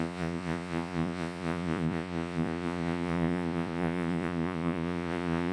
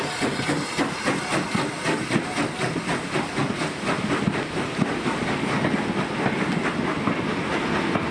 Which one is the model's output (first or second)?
first